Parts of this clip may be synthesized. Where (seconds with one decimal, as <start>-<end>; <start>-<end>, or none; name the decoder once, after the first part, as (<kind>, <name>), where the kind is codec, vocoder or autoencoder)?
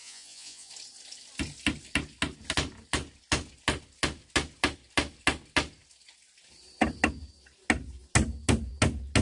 0.0-0.7 (vocoder, Vocos)